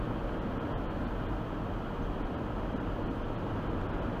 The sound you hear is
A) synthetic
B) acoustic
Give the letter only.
B